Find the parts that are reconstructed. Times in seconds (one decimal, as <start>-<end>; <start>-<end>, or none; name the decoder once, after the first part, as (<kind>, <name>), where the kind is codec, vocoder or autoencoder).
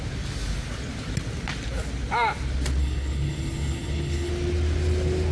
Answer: 2.8-4.3 (codec, HILCodec)